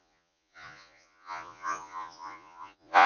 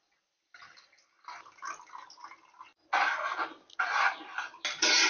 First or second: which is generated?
first